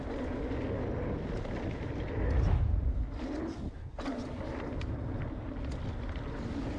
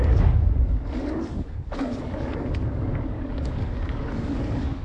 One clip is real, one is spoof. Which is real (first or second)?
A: first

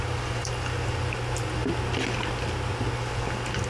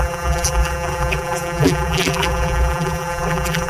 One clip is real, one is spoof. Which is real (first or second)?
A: first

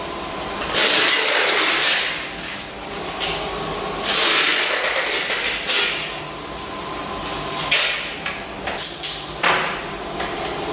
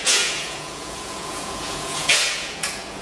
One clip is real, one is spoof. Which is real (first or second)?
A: first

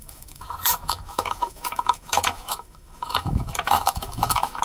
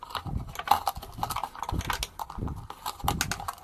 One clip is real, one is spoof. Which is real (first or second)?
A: second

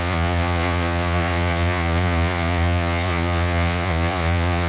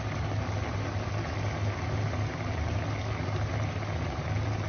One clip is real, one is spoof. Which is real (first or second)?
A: second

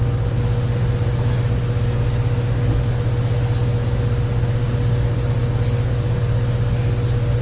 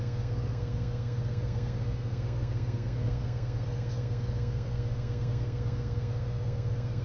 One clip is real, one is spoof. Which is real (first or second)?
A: first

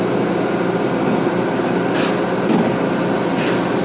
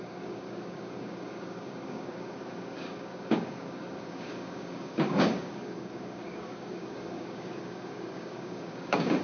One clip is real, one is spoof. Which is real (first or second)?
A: first